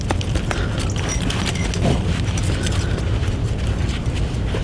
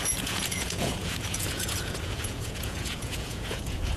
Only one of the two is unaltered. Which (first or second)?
first